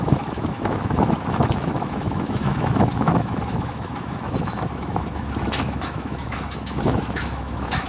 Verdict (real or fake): fake